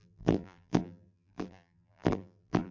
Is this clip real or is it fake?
fake